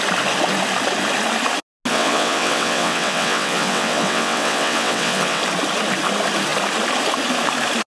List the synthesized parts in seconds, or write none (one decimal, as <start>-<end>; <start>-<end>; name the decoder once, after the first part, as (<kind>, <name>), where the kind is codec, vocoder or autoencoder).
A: 1.9-5.4 (vocoder, WaveNeXt)